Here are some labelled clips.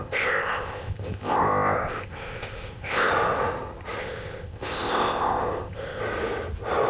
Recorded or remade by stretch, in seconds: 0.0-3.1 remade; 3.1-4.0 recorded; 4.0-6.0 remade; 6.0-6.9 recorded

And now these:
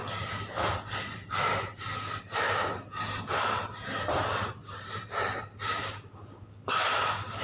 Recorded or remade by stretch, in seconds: 0.0-4.6 recorded; 4.6-5.4 remade; 5.4-7.4 recorded

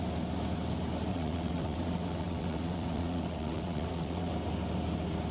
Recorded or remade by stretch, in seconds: 0.0-1.1 recorded; 1.1-4.3 remade; 4.3-5.3 recorded